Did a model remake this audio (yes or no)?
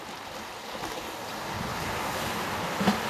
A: no